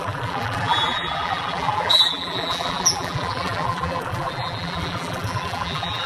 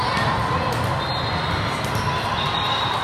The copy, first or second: first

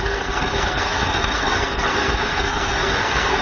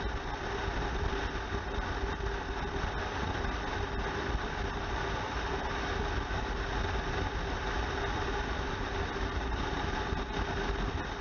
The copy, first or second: first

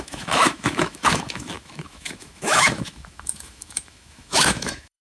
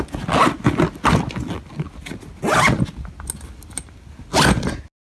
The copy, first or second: first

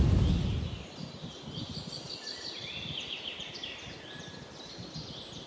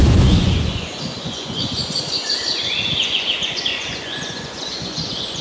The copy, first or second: second